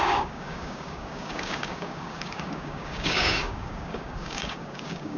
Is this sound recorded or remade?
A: remade